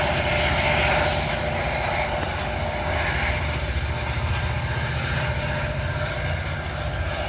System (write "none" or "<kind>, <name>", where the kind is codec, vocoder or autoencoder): none